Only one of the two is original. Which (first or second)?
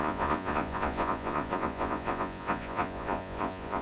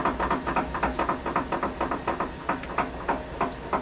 second